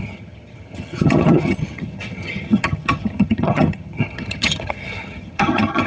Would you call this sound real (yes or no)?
no